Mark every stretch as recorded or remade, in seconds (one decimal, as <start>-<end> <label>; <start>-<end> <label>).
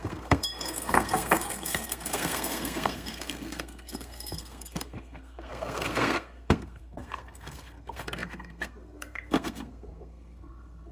0.0-10.9 remade